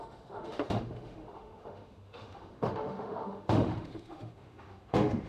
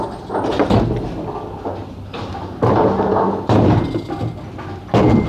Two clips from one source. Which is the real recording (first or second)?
second